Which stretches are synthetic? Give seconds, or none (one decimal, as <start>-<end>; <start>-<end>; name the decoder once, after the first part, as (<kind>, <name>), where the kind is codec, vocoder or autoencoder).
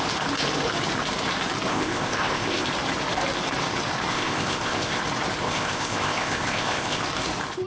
1.7-2.7 (codec, ZipCodec); 4.1-5.0; 5.4-7.0